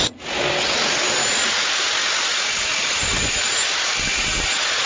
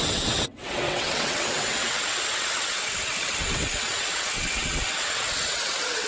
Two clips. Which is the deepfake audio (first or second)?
second